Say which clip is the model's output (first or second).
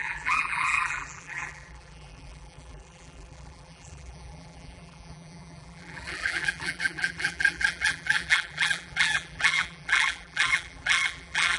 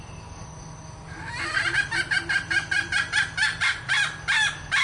first